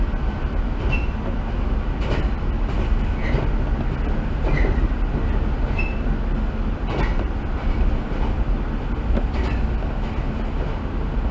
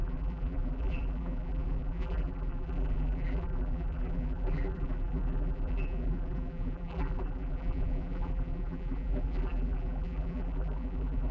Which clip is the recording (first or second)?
first